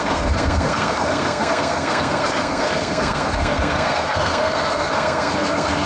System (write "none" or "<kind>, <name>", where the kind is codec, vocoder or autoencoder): codec, SNAC